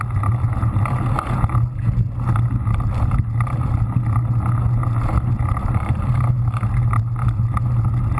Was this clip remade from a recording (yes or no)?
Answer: no